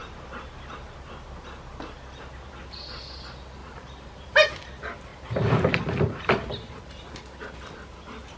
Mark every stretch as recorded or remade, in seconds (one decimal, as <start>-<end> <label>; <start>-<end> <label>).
0.0-3.6 recorded; 3.6-4.5 remade; 4.5-5.1 recorded; 5.1-6.8 remade; 6.8-8.4 recorded